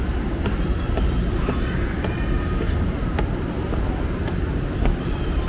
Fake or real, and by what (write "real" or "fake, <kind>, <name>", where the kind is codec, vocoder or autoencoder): real